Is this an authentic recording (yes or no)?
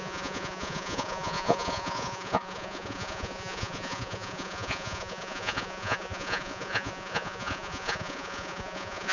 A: no